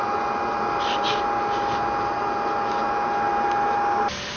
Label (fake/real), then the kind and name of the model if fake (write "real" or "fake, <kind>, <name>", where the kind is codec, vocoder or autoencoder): real